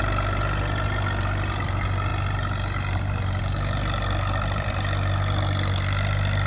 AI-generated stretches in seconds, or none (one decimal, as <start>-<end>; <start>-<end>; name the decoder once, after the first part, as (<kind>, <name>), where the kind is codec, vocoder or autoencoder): none